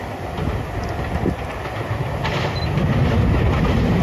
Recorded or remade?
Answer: recorded